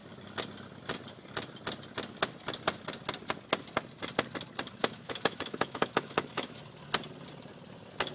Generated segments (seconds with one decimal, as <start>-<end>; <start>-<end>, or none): 4.8-6.6